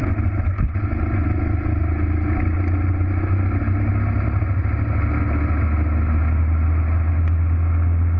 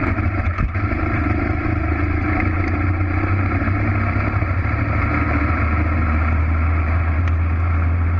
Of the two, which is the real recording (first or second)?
first